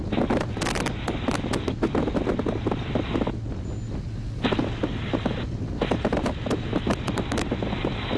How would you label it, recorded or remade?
recorded